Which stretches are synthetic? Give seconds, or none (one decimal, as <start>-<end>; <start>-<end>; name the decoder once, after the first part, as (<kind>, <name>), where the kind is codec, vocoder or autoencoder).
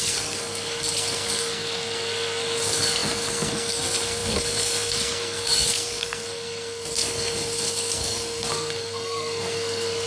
0.0-10.1 (codec, SNAC)